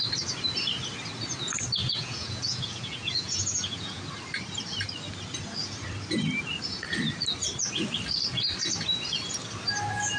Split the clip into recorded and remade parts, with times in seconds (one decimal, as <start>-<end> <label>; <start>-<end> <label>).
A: 0.0-1.8 recorded; 1.8-4.0 remade; 4.0-10.2 recorded